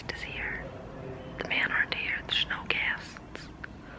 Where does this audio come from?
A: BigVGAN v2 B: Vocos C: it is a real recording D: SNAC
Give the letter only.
C